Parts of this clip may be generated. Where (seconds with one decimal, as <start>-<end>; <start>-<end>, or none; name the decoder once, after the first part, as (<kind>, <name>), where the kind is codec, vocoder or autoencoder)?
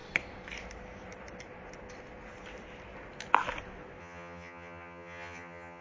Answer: 4.0-5.8 (vocoder, HiFi-GAN)